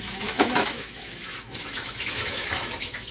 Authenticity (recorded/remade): remade